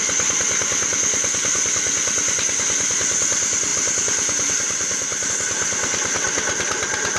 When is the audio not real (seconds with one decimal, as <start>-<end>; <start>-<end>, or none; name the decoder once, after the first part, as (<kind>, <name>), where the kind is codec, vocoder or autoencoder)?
none